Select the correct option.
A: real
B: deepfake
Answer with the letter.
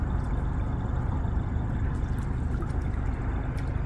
A